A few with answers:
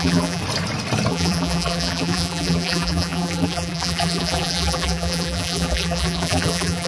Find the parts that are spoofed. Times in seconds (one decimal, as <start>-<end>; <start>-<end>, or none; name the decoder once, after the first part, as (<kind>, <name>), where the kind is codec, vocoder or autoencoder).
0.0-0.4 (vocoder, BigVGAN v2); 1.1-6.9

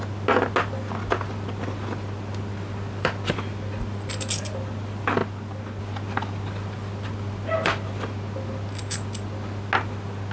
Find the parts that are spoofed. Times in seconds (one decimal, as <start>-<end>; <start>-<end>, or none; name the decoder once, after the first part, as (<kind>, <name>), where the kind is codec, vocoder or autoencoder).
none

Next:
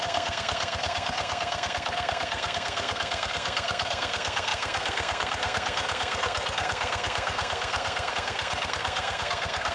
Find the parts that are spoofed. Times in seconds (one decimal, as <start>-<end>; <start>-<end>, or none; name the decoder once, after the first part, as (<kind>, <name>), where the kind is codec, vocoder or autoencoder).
0.0-9.7 (codec, SNAC)